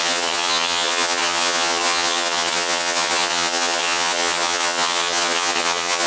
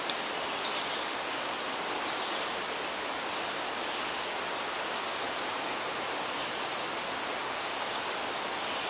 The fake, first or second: first